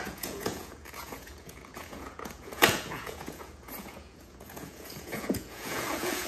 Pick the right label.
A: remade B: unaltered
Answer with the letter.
A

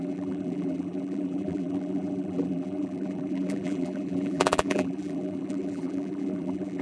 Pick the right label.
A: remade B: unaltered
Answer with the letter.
A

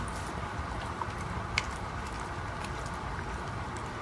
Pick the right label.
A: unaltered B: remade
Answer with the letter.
B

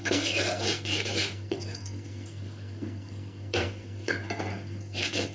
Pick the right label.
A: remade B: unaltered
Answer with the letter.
A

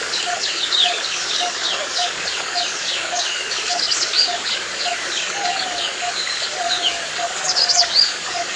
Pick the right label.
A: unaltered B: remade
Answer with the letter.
B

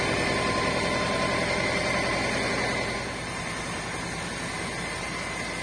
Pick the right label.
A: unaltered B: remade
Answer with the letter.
A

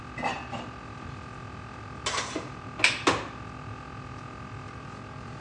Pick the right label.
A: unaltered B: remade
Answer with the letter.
A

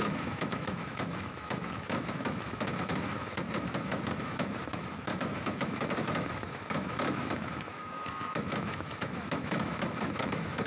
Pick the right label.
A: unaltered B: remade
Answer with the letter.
B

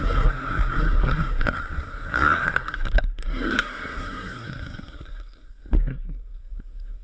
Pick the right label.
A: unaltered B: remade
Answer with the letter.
B